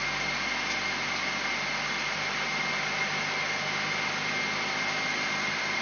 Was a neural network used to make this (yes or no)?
no